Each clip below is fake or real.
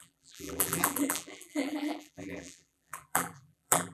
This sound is fake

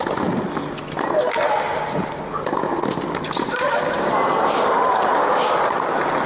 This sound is fake